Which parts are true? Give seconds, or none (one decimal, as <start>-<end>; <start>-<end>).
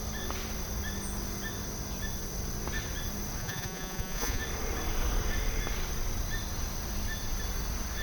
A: 0.0-3.4; 4.4-8.0